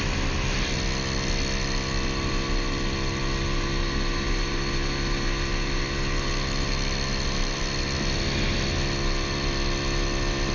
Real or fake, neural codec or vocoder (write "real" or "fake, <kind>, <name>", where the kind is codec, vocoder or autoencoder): real